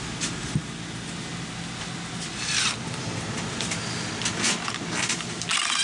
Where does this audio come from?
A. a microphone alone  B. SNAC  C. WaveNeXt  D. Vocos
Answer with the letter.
A